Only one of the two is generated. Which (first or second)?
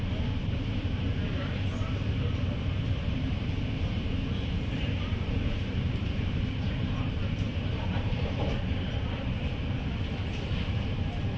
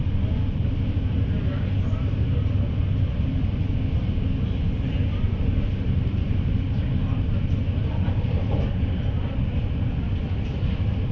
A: first